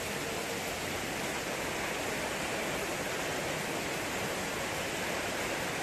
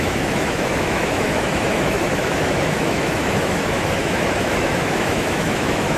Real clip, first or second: first